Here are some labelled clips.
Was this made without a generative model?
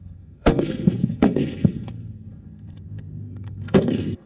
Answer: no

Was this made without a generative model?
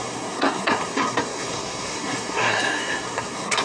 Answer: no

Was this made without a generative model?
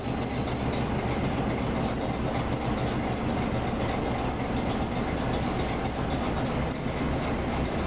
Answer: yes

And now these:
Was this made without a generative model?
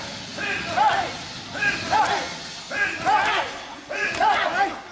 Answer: yes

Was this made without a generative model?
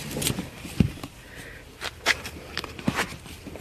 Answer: no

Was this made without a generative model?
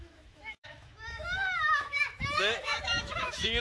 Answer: no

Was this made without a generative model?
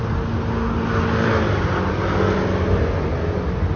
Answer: yes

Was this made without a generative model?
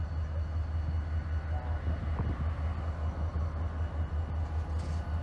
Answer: yes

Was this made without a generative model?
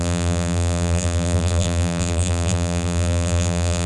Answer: no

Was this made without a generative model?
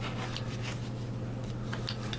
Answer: yes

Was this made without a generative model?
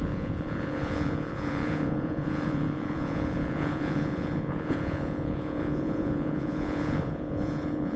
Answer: no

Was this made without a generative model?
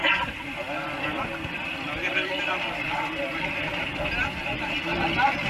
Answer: yes